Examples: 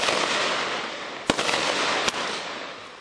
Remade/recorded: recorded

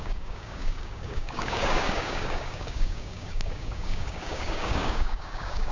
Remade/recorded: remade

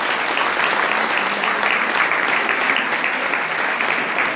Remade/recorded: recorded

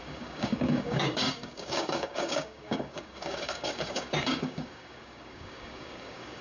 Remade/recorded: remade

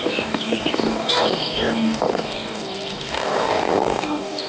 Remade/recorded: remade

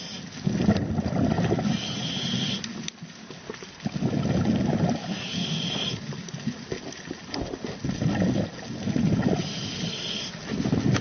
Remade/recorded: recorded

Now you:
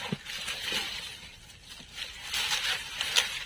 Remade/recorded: recorded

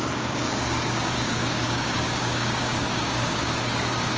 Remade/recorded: remade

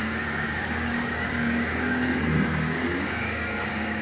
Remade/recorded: remade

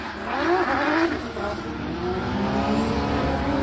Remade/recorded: recorded